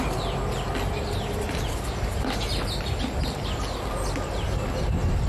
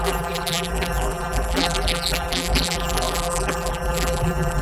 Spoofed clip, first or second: second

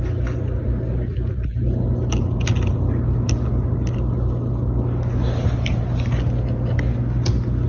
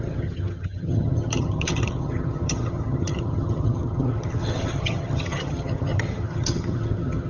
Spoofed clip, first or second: second